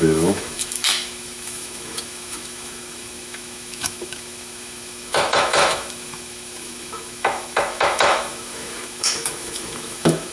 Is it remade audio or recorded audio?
remade